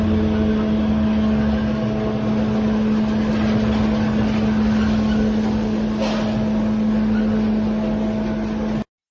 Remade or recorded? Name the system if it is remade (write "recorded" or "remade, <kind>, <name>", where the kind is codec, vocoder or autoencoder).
recorded